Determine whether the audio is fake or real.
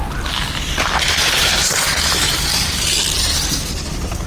real